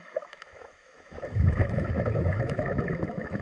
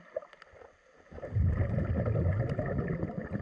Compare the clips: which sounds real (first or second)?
second